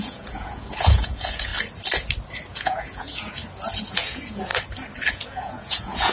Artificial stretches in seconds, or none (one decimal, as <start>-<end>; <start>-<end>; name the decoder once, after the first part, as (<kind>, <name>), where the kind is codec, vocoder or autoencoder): 0.0-1.5 (vocoder, Vocos); 2.5-3.4; 3.9-4.5; 5.1-6.1